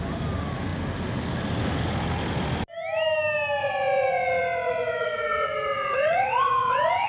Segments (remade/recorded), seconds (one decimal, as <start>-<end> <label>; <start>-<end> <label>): 0.0-3.6 recorded; 3.6-7.1 remade